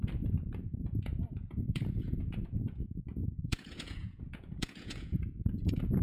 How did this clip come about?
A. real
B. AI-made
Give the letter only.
B